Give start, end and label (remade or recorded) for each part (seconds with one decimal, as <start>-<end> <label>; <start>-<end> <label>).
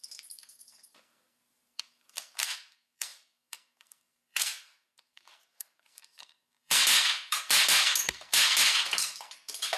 0.0-9.8 remade